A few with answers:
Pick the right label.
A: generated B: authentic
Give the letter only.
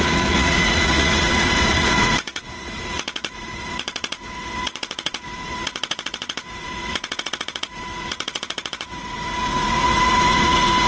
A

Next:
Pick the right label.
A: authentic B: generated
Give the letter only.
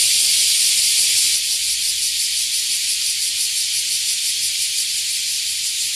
A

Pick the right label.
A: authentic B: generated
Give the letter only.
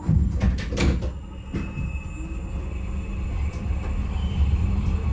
A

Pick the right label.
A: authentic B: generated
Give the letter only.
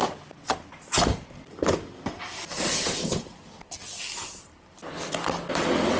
B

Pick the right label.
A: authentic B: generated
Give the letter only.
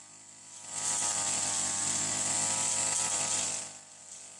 A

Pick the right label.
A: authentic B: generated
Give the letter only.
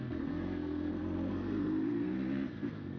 B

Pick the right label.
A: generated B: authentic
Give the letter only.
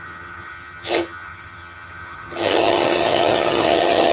A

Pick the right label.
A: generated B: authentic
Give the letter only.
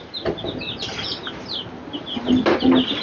B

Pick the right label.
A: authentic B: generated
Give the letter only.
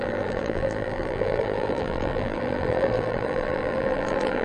B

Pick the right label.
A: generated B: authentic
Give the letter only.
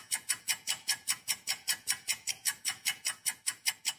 A